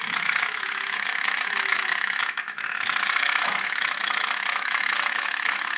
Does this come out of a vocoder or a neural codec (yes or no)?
yes